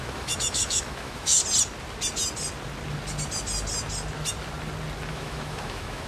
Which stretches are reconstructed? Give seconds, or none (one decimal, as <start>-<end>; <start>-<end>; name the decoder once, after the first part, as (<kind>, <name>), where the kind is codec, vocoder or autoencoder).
0.0-1.4 (autoencoder, DAC-VAE); 5.1-6.1